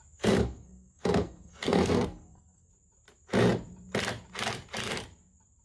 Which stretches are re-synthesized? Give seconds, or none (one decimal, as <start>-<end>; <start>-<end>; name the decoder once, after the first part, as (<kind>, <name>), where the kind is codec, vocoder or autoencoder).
0.4-2.7 (codec, SNAC)